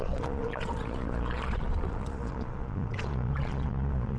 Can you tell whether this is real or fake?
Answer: fake